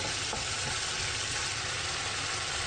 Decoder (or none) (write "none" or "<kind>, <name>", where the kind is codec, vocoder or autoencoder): none